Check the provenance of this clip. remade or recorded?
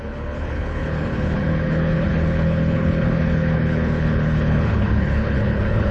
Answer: remade